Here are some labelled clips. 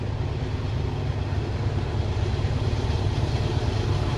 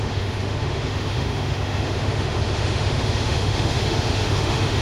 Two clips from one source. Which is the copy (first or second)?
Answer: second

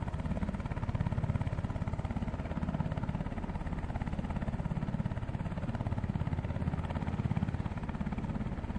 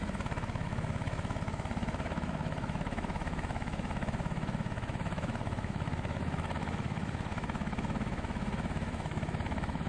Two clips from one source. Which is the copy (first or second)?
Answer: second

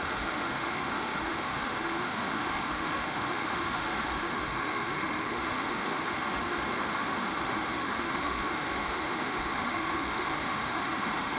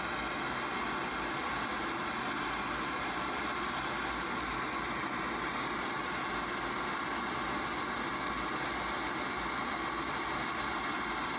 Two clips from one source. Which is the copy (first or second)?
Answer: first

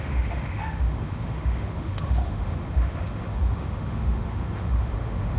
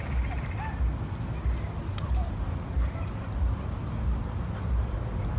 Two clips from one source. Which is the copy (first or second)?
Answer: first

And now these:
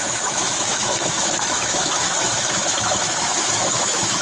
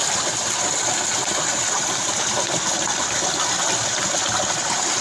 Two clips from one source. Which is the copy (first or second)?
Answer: first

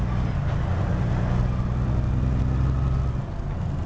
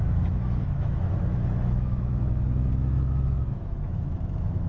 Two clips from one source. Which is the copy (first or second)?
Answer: second